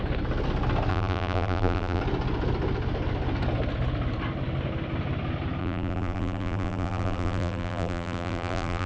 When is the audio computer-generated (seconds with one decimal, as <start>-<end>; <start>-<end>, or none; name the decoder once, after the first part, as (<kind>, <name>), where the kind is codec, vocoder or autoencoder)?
0.9-2.0 (vocoder, BigVGAN v2); 5.6-8.9